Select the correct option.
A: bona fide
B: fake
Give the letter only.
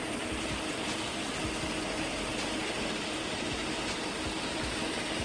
A